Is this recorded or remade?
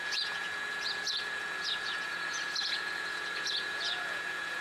remade